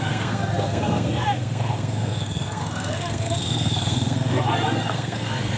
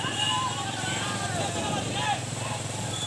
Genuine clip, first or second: second